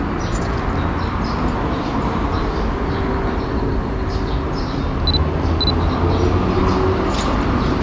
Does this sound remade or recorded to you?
recorded